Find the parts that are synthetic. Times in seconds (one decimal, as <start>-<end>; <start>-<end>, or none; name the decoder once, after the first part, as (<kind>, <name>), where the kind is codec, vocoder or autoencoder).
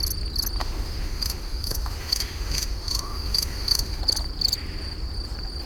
0.6-4.0 (autoencoder, DAC-VAE)